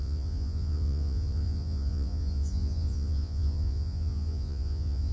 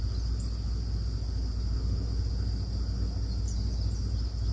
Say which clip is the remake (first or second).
first